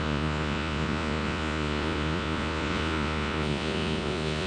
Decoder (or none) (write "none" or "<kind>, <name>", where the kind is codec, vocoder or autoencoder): vocoder, Vocos